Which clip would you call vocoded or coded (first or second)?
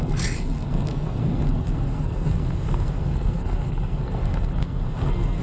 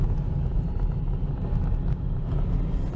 first